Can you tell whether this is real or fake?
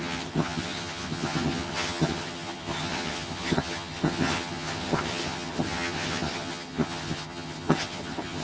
fake